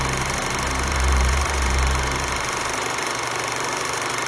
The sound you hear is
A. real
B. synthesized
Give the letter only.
B